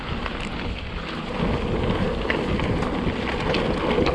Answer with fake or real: real